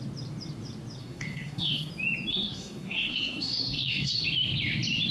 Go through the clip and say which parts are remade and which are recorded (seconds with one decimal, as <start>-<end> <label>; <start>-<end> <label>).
0.0-1.0 recorded; 1.0-1.9 remade; 1.9-2.3 recorded; 2.3-4.2 remade; 4.2-5.1 recorded